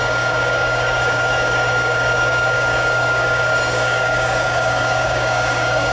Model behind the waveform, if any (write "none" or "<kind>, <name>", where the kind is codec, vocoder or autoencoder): codec, DAC